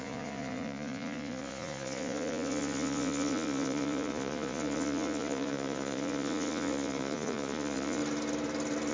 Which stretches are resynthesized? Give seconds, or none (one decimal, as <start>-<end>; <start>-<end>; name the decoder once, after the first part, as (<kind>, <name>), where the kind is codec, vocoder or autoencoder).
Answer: 0.0-8.0 (vocoder, Vocos)